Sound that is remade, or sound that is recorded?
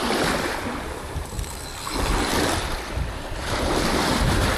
recorded